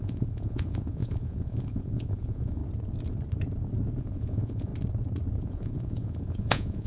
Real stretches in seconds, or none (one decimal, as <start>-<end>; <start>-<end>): 2.6-4.0; 4.7-5.4